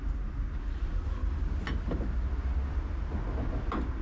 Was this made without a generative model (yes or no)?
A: yes